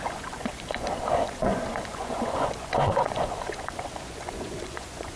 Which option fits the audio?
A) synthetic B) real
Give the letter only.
A